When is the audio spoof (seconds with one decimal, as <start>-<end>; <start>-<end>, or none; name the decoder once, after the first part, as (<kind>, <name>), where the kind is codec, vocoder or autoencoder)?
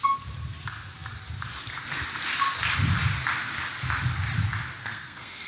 4.8-5.5 (codec, SNAC)